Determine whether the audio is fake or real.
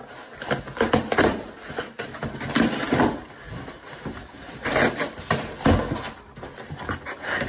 real